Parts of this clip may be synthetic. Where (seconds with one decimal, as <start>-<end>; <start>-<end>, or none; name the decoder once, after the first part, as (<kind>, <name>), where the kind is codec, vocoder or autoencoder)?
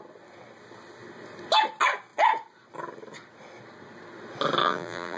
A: 4.6-5.2 (vocoder, BigVGAN v2)